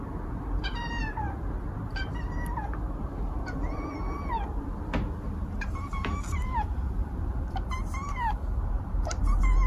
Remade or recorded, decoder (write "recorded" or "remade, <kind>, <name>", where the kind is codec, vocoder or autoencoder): remade, vocoder, BigVGAN v2